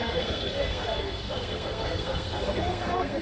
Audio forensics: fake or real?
fake